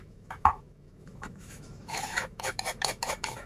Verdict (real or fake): fake